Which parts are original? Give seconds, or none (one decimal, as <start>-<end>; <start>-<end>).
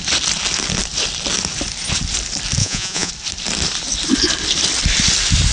0.0-2.6; 3.1-5.5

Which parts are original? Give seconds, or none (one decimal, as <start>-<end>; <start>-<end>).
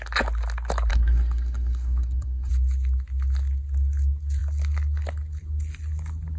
0.0-0.9; 2.5-6.4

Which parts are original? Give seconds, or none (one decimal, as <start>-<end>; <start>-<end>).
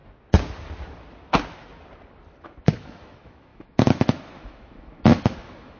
0.0-2.4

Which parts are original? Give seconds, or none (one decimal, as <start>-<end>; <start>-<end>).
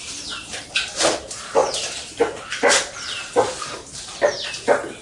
0.0-5.0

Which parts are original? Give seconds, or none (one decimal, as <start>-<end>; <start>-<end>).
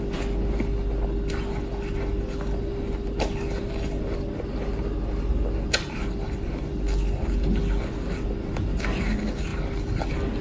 0.0-10.4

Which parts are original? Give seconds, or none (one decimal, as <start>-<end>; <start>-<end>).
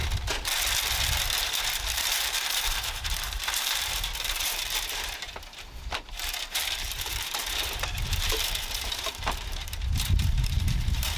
0.0-1.9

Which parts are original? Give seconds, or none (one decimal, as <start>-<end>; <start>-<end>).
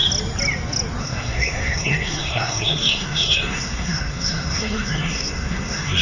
0.0-1.0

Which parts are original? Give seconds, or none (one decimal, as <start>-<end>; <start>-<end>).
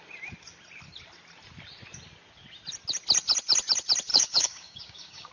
0.0-4.1